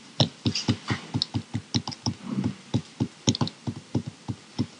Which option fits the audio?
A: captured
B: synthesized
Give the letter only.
A